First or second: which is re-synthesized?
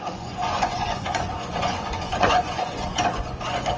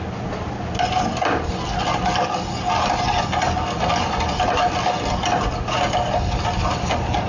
first